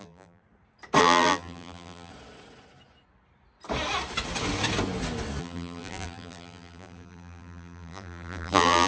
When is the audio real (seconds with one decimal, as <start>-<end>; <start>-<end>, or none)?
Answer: 0.4-1.0; 2.1-5.4